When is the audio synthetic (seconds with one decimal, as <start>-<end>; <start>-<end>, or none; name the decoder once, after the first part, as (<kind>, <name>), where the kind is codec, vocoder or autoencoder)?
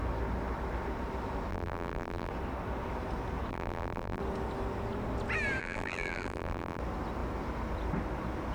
1.5-2.3 (vocoder, BigVGAN v2); 3.5-4.2; 5.6-6.8